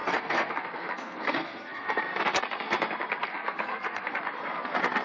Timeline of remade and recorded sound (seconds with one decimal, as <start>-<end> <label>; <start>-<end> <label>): 0.0-2.0 remade; 2.0-3.3 recorded; 3.3-4.1 remade; 4.1-5.0 recorded